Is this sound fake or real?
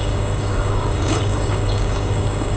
fake